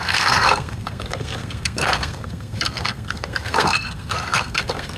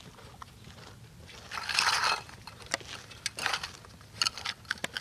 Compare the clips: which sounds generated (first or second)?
first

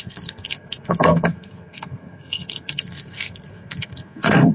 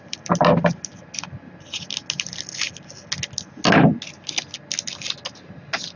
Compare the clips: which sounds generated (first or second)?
first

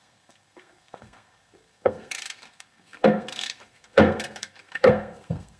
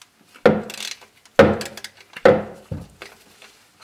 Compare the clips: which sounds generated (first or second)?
first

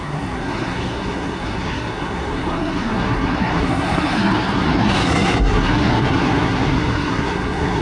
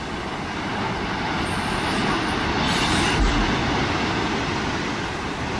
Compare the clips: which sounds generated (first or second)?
first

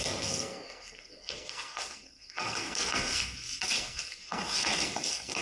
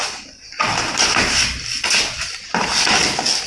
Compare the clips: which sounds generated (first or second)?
first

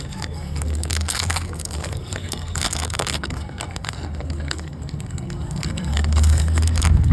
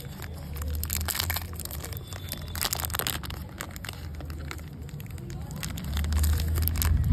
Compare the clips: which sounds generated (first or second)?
first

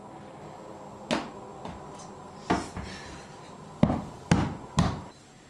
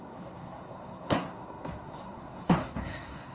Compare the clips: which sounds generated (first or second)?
second